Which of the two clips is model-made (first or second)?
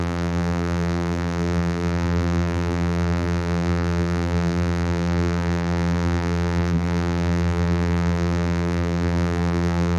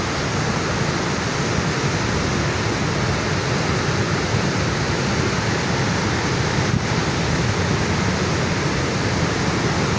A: first